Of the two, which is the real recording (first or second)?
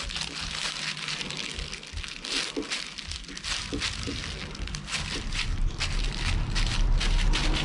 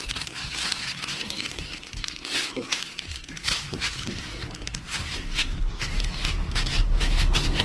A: first